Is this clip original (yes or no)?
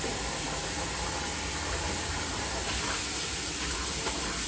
yes